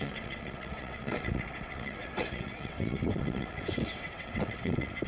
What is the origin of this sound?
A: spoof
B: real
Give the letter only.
A